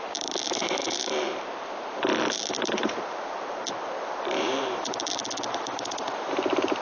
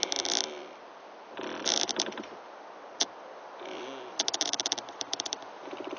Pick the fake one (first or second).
first